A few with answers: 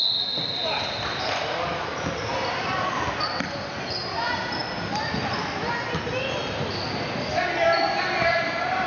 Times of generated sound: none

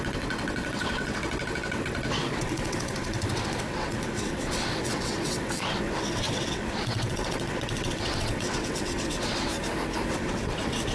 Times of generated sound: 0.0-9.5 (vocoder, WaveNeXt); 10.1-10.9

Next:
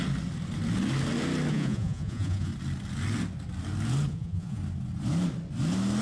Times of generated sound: 1.5-2.5 (vocoder, Vocos); 4.1-4.6

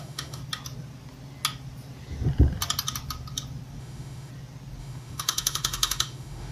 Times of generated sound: 0.0-0.4 (autoencoder, DAC-VAE); 3.8-4.3; 4.8-6.5

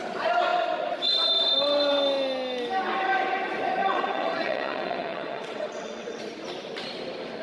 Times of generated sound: 3.8-6.2 (vocoder, WaveNeXt)

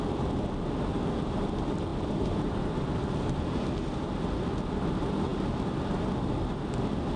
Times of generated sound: 1.9-3.4 (vocoder, BigVGAN v2)

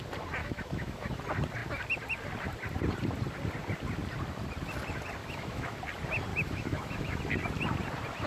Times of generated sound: 0.4-1.2 (autoencoder, DAC-VAE); 5.2-5.8; 6.3-7.2

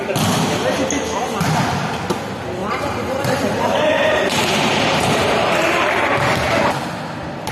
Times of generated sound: 2.6-6.1 (vocoder, BigVGAN v2)